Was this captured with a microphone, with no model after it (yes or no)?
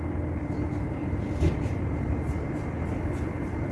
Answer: yes